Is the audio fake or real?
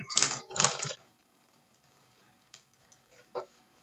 fake